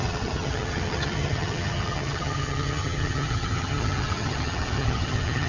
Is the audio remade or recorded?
remade